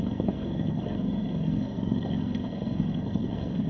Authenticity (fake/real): fake